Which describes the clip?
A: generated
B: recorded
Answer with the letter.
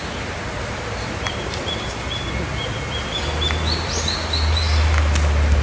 B